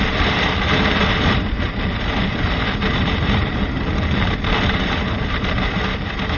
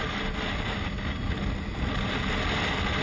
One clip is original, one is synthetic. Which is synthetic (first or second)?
first